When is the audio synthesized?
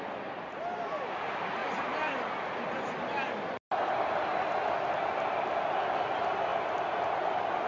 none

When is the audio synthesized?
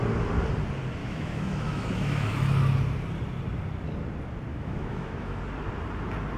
1.0-2.4; 4.5-5.4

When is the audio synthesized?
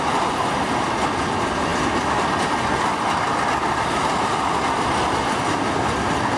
none